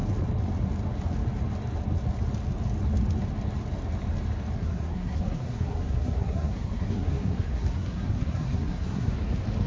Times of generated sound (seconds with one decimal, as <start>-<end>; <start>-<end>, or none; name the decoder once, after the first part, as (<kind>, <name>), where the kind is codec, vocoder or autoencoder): 4.6-9.1 (codec, SNAC)